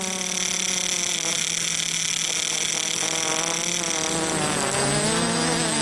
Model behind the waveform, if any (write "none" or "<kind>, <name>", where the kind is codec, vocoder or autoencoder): none